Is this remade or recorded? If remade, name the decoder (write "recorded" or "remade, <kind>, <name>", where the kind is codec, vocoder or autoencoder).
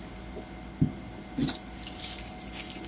recorded